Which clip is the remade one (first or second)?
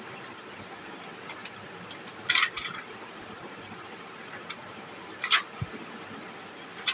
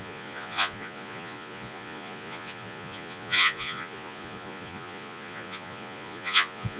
second